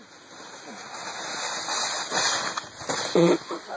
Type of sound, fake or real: real